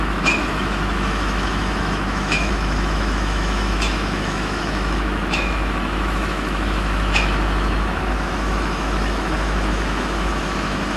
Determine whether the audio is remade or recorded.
remade